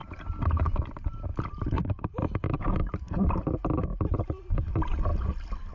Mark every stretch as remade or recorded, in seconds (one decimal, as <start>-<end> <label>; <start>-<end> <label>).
0.0-0.8 remade; 0.8-1.3 recorded; 1.3-1.9 remade; 1.9-5.7 recorded